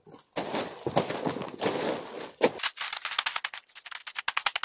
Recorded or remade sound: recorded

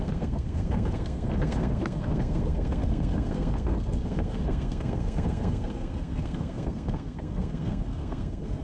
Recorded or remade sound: remade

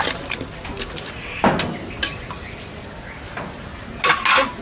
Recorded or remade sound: recorded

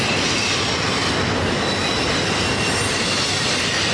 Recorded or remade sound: recorded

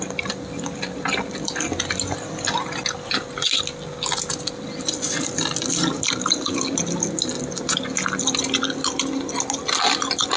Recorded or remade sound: recorded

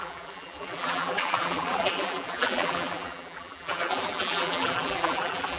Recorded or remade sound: remade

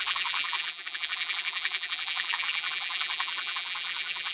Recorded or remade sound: remade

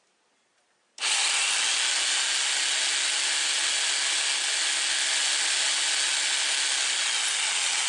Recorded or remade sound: recorded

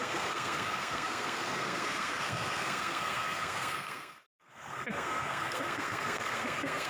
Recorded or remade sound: remade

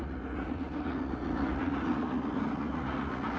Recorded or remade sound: remade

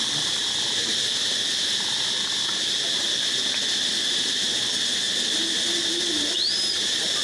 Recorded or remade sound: recorded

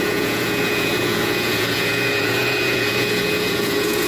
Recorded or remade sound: remade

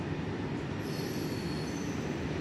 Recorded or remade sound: remade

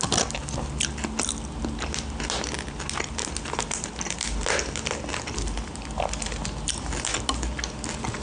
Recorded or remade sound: recorded